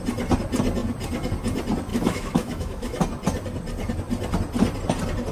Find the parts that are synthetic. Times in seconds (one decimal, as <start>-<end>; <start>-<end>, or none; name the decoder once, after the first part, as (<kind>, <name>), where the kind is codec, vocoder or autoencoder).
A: 1.9-3.0 (autoencoder, DAC-VAE)